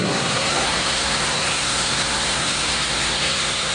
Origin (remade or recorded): remade